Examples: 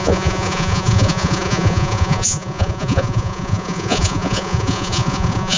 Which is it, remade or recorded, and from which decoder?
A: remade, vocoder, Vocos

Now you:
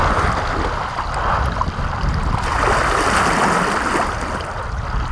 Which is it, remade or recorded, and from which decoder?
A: recorded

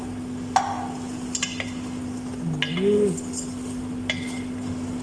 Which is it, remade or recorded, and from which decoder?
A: recorded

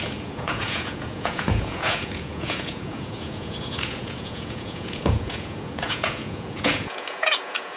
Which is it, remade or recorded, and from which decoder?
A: remade, vocoder, Vocos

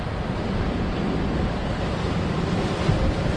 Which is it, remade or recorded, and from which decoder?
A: recorded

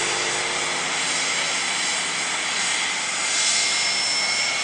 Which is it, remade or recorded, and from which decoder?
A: recorded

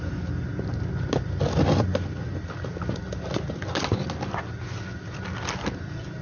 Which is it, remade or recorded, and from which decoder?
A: recorded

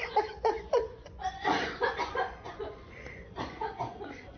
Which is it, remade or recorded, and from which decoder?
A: remade, vocoder, Vocos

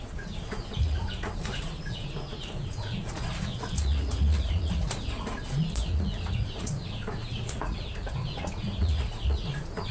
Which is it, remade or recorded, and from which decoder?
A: remade, vocoder, Vocos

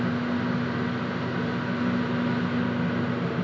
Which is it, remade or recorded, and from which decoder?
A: recorded